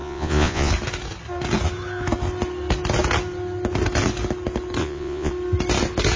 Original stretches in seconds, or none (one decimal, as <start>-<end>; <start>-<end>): 0.7-4.8; 5.3-6.2